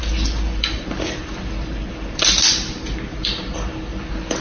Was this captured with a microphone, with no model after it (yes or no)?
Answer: yes